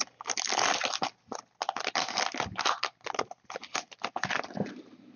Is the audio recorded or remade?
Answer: recorded